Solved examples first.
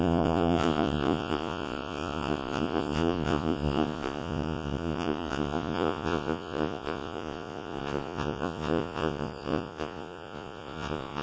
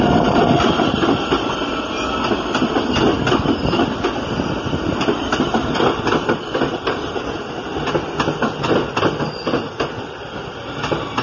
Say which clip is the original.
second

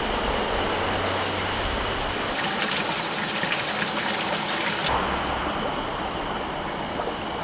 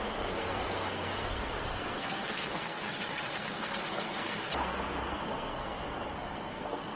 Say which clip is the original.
first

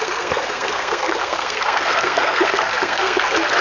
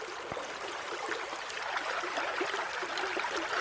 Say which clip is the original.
second